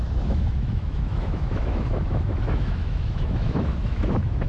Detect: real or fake fake